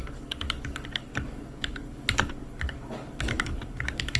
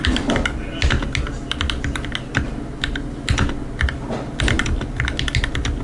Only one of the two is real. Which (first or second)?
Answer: second